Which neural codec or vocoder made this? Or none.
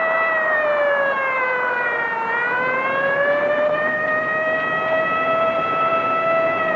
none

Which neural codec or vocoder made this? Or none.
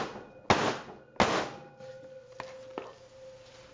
none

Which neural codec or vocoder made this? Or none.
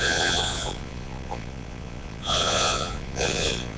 vocoder, Vocos